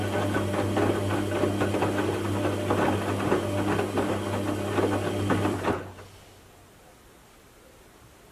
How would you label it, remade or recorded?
recorded